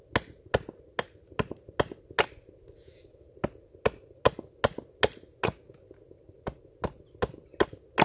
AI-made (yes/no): no